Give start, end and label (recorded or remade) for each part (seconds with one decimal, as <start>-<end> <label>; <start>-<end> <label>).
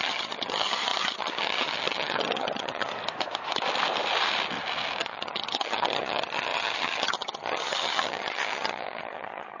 0.0-2.9 remade; 2.9-5.0 recorded; 5.0-9.6 remade